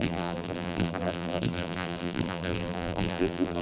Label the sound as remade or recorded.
remade